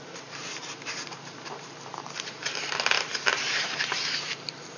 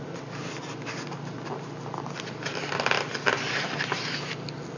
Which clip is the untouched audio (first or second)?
second